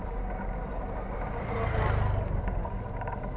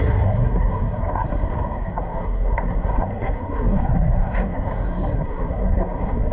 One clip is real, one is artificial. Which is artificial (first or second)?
second